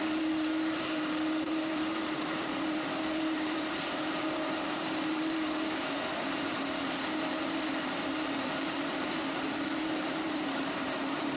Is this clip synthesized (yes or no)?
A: yes